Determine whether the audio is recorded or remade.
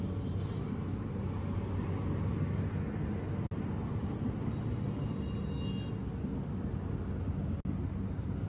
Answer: recorded